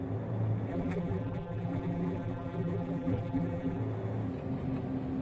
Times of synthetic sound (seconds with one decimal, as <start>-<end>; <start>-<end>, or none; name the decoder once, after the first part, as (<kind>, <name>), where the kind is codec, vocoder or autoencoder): 0.7-3.8 (vocoder, BigVGAN v2)